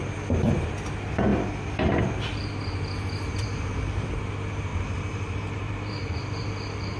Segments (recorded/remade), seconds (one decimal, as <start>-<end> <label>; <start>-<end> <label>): 0.0-4.7 recorded; 4.7-6.2 remade; 6.2-7.0 recorded